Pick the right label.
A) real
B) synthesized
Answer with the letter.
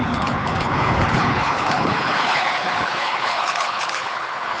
B